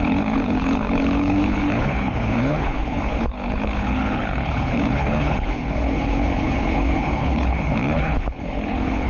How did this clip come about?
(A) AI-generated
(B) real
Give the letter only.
A